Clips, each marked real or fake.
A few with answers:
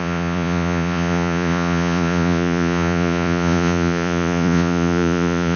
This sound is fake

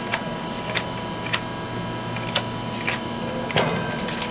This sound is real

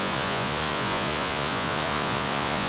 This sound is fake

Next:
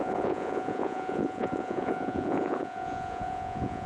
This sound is fake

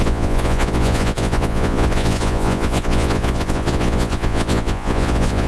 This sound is fake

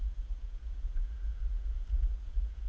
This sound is fake